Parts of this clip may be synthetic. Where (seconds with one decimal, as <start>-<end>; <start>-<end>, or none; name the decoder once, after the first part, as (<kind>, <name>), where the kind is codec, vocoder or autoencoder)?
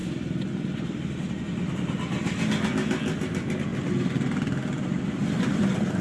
none